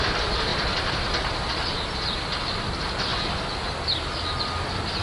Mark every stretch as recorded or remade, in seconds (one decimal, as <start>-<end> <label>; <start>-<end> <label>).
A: 0.0-0.5 recorded; 0.5-1.3 remade; 1.3-5.0 recorded